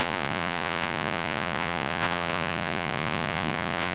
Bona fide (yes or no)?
no